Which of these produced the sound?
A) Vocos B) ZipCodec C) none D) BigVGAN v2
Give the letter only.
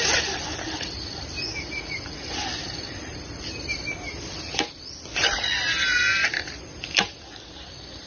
D